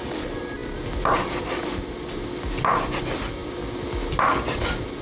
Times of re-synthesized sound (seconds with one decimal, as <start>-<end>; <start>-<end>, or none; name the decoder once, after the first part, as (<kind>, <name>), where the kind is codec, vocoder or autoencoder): none